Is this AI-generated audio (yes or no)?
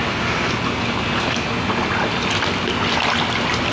no